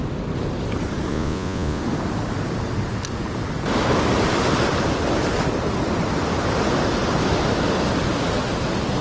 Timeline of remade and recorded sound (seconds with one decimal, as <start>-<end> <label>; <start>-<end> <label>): 0.0-1.1 recorded; 1.1-1.8 remade; 1.8-9.0 recorded

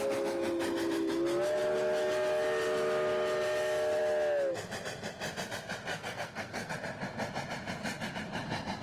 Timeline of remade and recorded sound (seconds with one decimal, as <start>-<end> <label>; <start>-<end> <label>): 0.0-5.9 recorded; 5.9-6.7 remade; 6.7-8.8 recorded

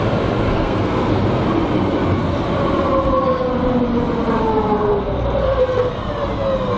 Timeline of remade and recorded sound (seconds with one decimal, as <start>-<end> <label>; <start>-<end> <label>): 0.0-0.5 recorded; 0.5-1.1 remade; 1.1-4.9 recorded; 4.9-5.9 remade; 5.9-6.8 recorded